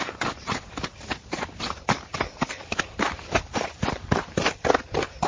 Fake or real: real